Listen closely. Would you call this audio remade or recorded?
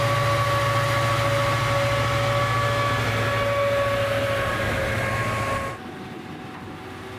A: recorded